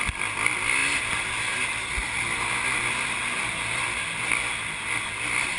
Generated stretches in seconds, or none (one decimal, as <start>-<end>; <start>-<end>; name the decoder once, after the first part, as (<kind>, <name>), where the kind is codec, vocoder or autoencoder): none